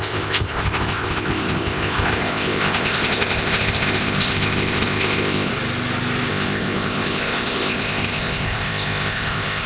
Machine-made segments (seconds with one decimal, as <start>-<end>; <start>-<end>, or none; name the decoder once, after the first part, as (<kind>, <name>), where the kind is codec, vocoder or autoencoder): 0.0-5.5 (codec, ZipCodec); 6.3-9.7